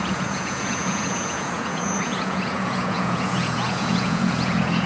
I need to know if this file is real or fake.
fake